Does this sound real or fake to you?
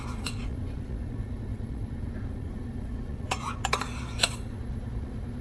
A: fake